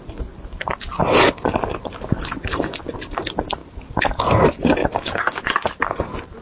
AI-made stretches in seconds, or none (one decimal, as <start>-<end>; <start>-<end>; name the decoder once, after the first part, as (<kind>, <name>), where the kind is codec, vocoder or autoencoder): 4.8-5.4 (codec, DAC)